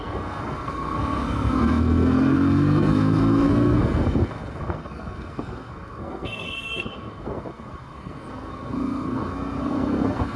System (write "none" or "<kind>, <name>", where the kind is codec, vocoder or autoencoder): codec, SNAC